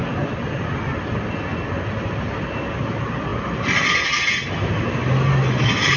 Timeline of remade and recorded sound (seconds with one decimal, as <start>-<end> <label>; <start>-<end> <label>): 0.0-6.0 recorded